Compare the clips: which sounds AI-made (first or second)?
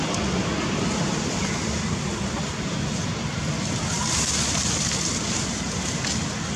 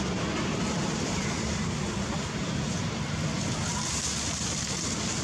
first